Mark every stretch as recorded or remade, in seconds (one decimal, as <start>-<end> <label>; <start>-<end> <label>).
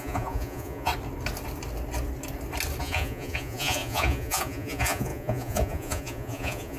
0.0-0.9 remade; 0.9-2.8 recorded; 2.8-6.8 remade